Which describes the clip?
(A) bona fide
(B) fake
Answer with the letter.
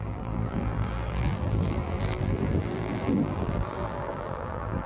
B